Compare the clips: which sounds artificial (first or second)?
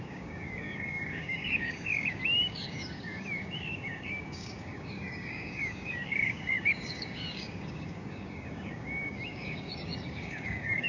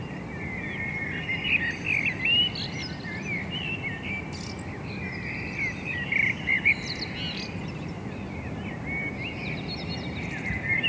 first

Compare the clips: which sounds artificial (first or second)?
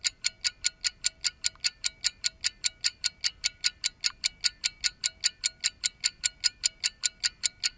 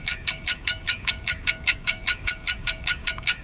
second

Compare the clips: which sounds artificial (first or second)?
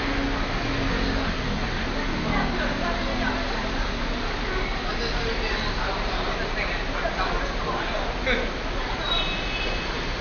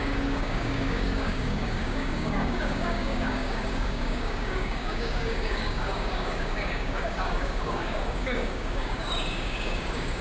second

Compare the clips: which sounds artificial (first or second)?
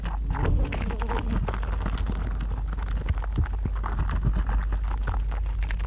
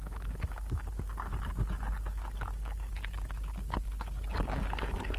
second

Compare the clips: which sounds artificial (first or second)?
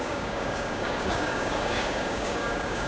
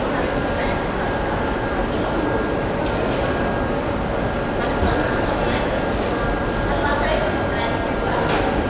first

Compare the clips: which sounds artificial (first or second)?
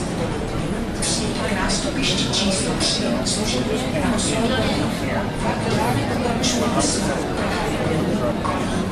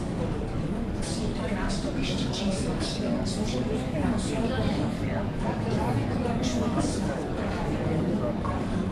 second